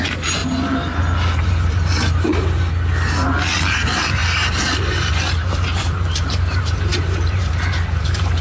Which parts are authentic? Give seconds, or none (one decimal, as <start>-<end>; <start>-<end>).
0.4-1.4; 2.3-3.7